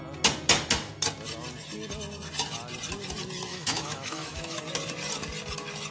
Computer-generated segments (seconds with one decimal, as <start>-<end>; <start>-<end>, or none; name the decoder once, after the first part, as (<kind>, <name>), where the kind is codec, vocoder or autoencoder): 3.5-4.6 (autoencoder, DAC-VAE)